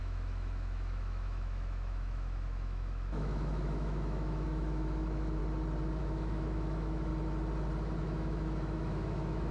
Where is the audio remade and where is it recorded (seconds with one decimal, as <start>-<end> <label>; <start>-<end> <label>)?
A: 0.0-5.4 remade; 5.4-6.0 recorded; 6.0-7.1 remade; 7.1-8.0 recorded; 8.0-9.5 remade